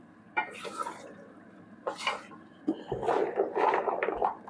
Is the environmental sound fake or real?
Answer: fake